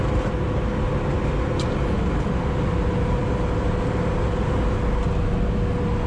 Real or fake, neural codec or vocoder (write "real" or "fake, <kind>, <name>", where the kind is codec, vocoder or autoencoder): real